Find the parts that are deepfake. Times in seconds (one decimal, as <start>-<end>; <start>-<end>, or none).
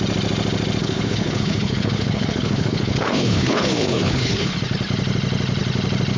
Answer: 0.8-4.5